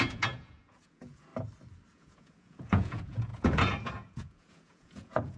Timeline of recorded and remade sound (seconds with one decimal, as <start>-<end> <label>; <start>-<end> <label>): 0.0-1.3 remade; 1.3-1.9 recorded; 1.9-5.4 remade